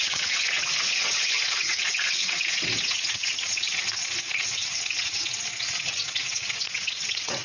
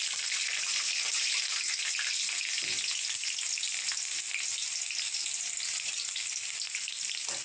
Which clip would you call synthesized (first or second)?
first